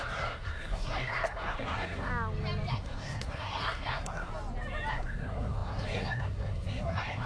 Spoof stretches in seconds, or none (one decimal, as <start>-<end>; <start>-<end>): 0.0-2.1; 2.7-4.3; 4.9-7.3